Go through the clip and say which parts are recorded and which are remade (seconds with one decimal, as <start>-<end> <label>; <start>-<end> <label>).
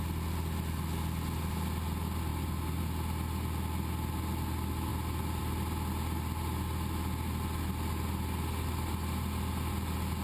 0.0-10.2 recorded